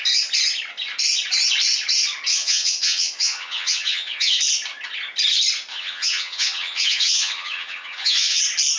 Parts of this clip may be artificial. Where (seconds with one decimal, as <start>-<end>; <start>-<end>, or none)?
2.3-4.4; 5.7-8.4